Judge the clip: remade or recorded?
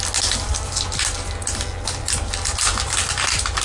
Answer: recorded